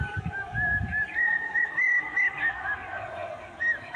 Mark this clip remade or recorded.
remade